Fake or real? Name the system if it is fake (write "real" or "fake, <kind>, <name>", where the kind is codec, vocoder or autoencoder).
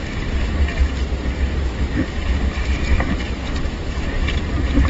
real